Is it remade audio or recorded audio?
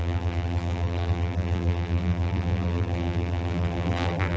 remade